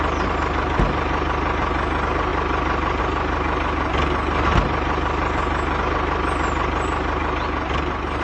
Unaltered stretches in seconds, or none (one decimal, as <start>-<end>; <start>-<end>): 0.0-8.2